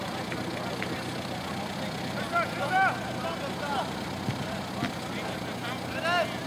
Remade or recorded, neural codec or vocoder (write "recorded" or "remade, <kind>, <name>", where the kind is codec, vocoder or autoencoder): recorded